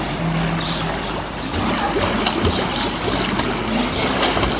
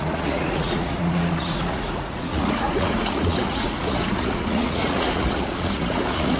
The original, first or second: first